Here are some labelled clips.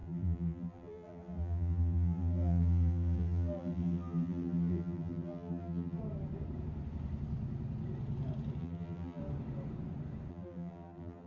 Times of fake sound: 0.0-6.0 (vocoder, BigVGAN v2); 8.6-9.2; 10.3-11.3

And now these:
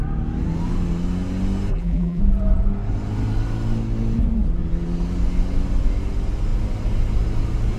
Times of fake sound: 1.7-2.2 (vocoder, BigVGAN v2)

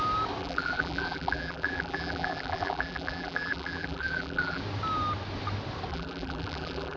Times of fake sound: 0.4-4.6 (vocoder, BigVGAN v2); 5.9-7.0

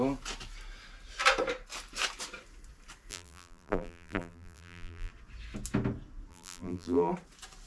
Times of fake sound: 3.1-5.1 (vocoder, BigVGAN v2); 6.3-7.1

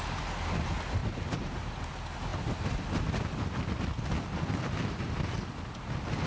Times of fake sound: 1.0-1.5 (vocoder, BigVGAN v2)